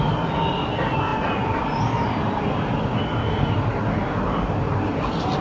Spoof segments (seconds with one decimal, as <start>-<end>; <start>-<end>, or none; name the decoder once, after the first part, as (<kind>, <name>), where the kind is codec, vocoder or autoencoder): none